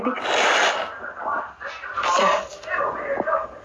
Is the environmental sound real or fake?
real